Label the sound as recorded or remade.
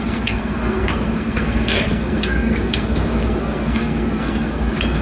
remade